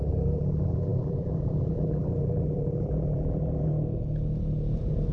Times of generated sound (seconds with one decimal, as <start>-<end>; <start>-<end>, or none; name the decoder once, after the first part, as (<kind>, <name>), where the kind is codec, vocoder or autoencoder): 0.0-3.7 (vocoder, BigVGAN v2)